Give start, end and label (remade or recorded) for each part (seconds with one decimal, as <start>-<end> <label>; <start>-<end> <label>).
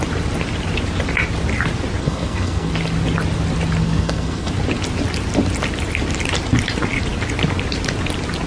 0.0-2.0 recorded; 2.0-2.7 remade; 2.7-3.8 recorded; 3.8-4.5 remade; 4.5-8.5 recorded